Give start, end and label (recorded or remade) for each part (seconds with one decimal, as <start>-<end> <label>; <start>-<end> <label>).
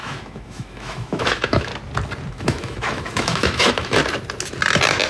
0.0-1.7 remade; 1.7-2.3 recorded; 2.3-4.0 remade; 4.0-5.1 recorded